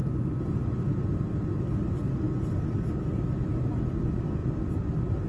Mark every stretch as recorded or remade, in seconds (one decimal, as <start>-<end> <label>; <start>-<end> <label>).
0.0-4.4 recorded; 4.4-5.3 remade